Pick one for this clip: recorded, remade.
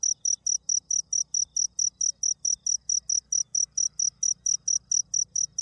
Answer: recorded